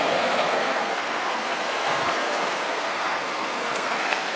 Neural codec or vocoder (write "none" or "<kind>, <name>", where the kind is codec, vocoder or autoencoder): codec, SNAC